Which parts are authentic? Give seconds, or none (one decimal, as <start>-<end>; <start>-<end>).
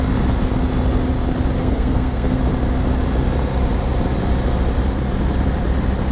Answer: 0.0-1.6; 2.4-6.1